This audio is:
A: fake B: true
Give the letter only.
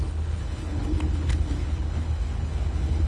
A